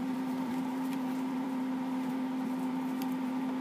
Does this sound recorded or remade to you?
remade